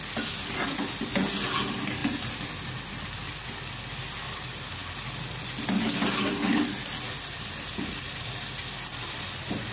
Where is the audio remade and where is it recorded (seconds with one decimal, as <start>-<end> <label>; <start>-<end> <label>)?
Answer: 0.0-9.7 recorded